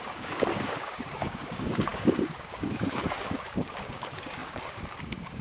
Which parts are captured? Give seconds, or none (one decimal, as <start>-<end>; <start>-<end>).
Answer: none